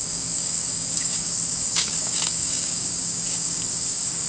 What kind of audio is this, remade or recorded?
remade